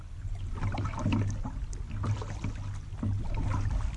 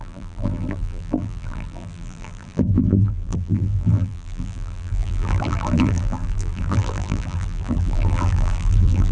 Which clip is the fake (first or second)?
second